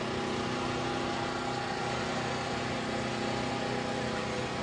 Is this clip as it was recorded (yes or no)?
yes